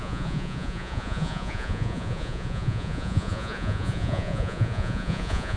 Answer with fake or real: fake